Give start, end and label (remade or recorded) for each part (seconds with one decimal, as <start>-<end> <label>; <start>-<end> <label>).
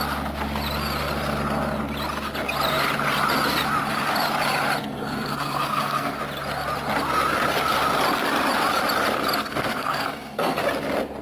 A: 0.0-4.8 recorded; 4.8-6.2 remade; 6.2-9.4 recorded; 9.4-10.6 remade; 10.6-11.2 recorded